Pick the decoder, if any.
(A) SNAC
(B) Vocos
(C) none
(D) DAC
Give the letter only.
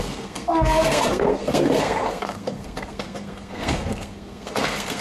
A